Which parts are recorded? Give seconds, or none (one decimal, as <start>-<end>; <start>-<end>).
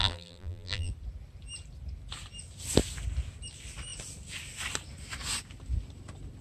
0.9-6.4